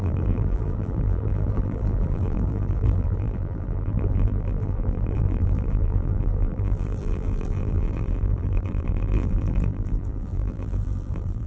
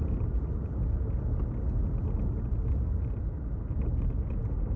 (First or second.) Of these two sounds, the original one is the second